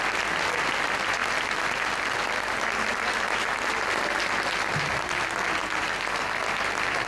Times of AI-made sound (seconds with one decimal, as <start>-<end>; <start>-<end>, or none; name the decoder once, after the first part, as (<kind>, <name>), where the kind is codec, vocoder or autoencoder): none